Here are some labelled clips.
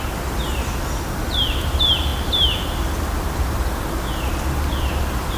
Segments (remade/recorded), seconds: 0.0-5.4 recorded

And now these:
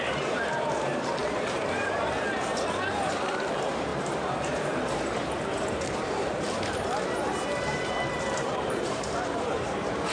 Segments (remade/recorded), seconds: 0.0-3.9 remade; 3.9-4.6 recorded; 4.6-10.1 remade

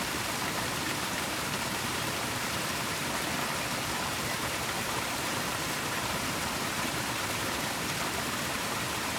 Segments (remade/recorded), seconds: 0.0-3.0 remade; 3.0-4.1 recorded; 4.1-9.2 remade